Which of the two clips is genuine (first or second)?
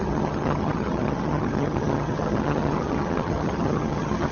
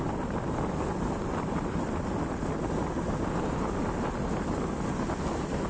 second